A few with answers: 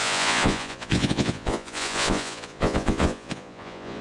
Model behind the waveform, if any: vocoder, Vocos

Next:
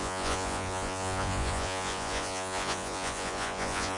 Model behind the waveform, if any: vocoder, Vocos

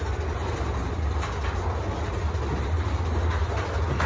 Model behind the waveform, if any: none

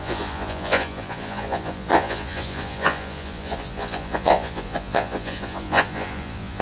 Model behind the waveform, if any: vocoder, Vocos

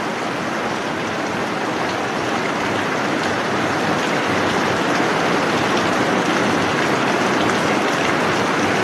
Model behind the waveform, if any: none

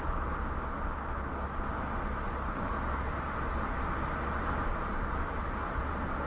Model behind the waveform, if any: none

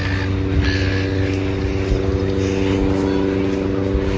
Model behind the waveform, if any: none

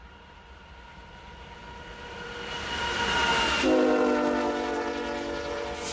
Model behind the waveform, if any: none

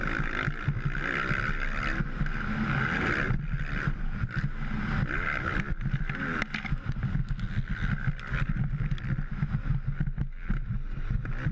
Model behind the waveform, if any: none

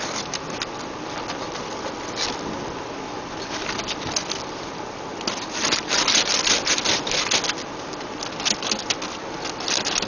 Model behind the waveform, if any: none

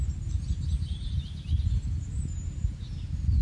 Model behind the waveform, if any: none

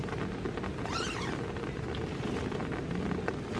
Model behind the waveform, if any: none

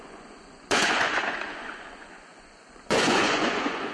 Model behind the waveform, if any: vocoder, Vocos